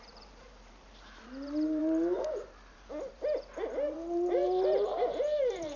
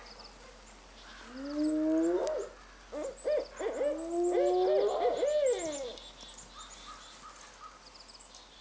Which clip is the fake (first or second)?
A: first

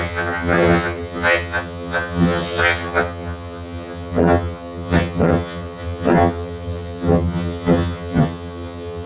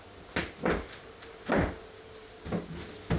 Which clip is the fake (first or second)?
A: first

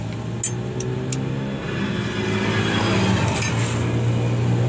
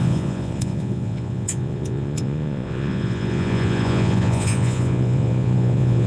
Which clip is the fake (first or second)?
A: second